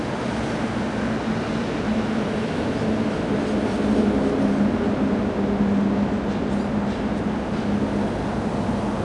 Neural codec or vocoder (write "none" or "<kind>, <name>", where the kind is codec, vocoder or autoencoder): none